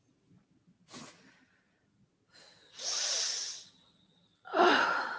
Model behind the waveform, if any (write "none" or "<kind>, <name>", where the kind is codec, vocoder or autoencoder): none